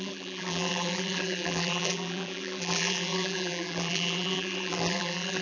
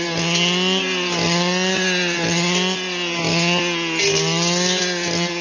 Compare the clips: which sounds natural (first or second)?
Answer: second